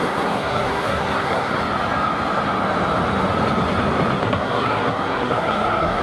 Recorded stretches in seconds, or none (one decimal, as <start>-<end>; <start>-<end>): 1.6-4.2